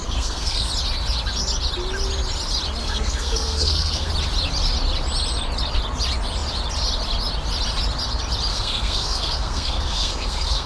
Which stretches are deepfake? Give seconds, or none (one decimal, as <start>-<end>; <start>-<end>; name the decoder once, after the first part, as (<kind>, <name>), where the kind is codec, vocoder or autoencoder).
0.0-0.7 (codec, SNAC); 2.8-4.1; 8.5-10.7